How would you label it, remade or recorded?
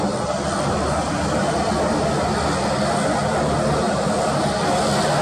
recorded